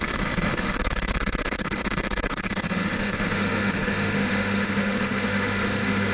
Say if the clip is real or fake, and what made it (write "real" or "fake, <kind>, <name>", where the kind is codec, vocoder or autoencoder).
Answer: fake, autoencoder, DAC-VAE